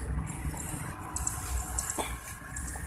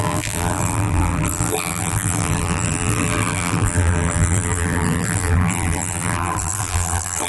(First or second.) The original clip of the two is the first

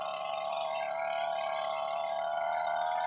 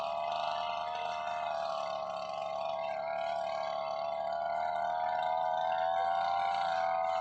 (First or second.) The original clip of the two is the second